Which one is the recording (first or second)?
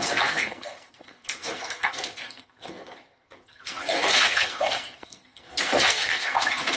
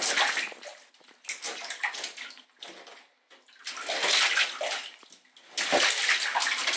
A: second